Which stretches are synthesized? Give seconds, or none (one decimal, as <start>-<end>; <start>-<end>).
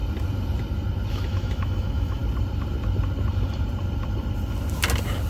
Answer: 1.1-2.2